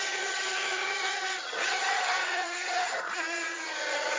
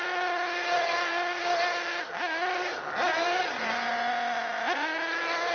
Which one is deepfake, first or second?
first